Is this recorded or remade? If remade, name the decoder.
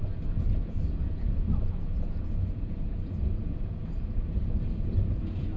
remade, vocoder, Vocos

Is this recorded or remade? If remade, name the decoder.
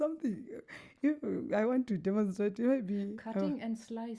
recorded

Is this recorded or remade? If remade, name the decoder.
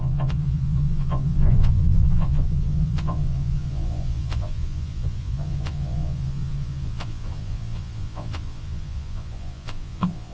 remade, vocoder, Vocos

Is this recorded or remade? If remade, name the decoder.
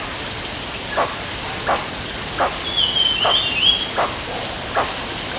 recorded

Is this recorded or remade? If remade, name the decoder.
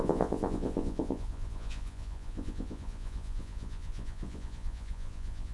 remade, vocoder, Vocos